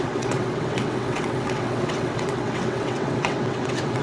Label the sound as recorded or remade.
remade